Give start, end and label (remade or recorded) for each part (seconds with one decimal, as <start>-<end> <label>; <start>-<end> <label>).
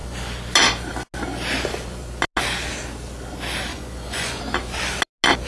0.0-3.7 recorded; 3.7-4.4 remade; 4.4-5.5 recorded